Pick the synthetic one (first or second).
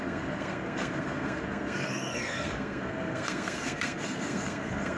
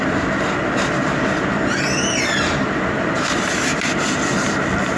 first